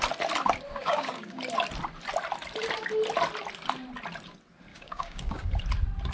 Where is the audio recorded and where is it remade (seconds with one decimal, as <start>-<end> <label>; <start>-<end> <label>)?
0.0-0.7 recorded; 0.7-1.4 remade; 1.4-4.7 recorded; 4.7-5.5 remade; 5.5-6.1 recorded